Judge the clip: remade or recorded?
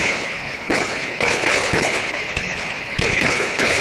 remade